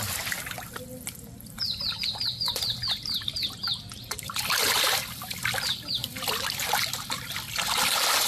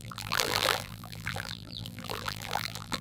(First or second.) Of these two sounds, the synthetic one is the second